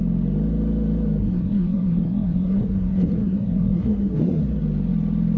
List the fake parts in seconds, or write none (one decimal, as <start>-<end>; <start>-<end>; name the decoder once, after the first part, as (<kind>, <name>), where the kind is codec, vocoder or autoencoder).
1.2-4.4 (codec, SNAC)